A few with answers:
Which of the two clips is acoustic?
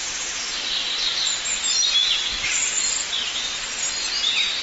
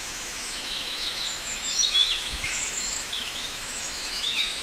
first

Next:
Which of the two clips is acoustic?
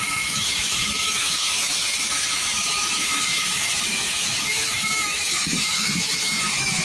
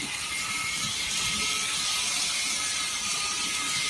second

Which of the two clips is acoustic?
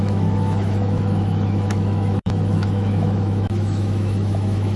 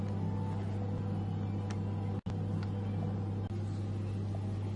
second